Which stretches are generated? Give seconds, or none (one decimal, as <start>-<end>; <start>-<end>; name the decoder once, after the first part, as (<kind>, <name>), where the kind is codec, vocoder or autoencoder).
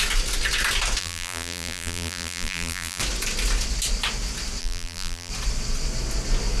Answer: 1.0-3.0 (vocoder, BigVGAN v2); 4.6-5.3